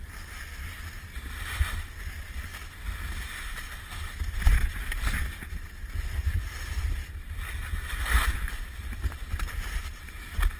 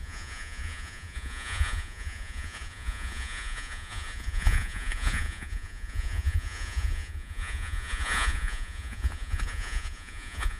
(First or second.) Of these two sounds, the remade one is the second